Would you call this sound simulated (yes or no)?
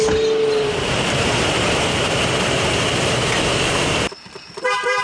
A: yes